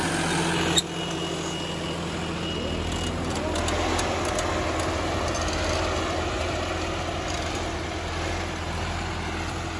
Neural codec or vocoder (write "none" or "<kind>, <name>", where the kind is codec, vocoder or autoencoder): none